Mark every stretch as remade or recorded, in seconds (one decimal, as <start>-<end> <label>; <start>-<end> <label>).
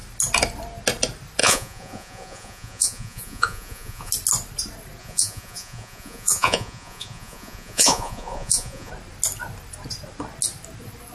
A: 0.0-1.4 recorded; 1.4-4.1 remade; 4.1-5.0 recorded; 5.0-8.9 remade; 8.9-11.1 recorded